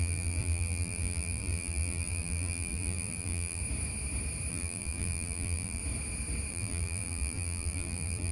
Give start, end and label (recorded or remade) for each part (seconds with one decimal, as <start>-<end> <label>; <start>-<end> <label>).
0.0-3.6 remade; 3.6-4.5 recorded; 4.5-5.8 remade; 5.8-6.5 recorded; 6.5-8.3 remade